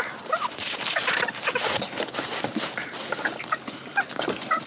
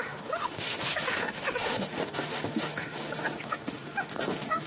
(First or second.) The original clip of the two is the first